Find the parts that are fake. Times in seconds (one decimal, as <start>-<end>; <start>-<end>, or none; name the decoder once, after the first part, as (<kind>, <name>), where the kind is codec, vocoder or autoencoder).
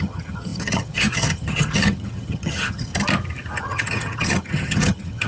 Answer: 0.0-2.9 (vocoder, HiFi-GAN); 3.6-5.3